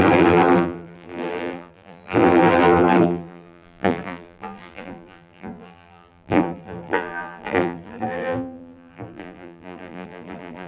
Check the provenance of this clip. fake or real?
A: fake